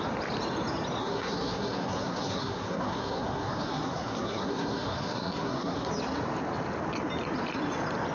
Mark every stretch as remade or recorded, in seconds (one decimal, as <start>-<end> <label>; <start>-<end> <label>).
0.0-1.0 recorded; 1.0-5.9 remade; 5.9-8.1 recorded